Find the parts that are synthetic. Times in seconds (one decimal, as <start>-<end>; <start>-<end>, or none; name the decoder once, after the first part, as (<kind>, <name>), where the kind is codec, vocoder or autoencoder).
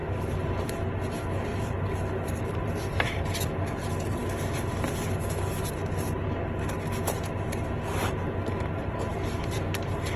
1.5-3.1 (vocoder, BigVGAN v2); 9.1-10.2